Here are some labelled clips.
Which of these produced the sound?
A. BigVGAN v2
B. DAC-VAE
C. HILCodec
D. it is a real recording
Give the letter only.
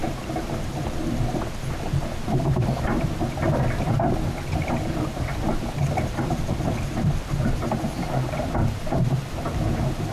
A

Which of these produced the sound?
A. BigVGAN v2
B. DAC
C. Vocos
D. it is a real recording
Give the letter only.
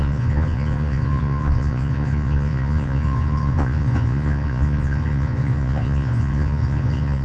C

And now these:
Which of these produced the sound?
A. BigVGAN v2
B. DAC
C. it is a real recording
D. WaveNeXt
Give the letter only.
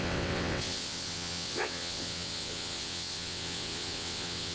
D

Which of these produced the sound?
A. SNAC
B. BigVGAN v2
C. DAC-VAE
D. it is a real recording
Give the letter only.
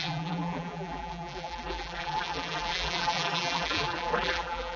B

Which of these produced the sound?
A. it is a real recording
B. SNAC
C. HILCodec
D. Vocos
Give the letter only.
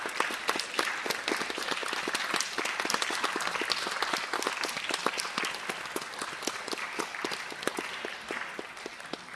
A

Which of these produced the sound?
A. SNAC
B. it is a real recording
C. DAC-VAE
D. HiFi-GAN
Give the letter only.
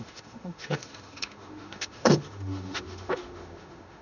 C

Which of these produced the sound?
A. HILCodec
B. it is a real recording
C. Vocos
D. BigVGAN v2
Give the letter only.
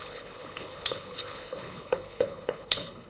A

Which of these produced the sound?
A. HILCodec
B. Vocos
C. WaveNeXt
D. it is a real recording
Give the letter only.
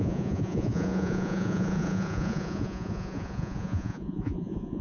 B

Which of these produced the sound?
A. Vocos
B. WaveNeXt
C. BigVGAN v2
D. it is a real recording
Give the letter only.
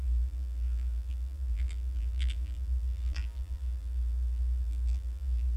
C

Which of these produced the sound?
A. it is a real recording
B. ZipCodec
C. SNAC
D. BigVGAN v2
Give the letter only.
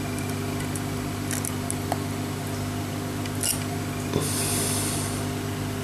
A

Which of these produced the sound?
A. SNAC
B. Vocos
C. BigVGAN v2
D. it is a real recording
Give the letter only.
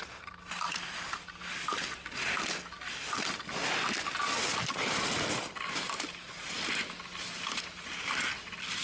D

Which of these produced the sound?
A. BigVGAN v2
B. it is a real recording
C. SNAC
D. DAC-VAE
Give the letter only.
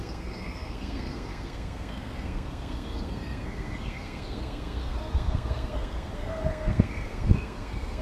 C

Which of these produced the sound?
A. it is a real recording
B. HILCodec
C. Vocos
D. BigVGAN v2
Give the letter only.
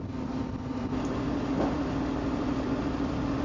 D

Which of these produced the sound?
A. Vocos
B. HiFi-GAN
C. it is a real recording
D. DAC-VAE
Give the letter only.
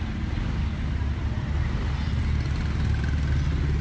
C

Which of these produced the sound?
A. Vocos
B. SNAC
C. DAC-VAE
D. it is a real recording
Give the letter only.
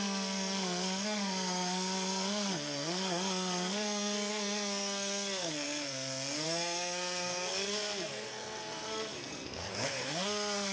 B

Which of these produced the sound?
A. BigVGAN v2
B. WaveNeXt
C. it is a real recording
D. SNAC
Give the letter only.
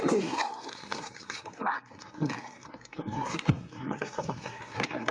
D